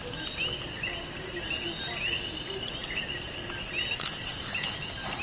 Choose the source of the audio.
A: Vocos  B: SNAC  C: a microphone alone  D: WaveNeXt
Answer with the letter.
C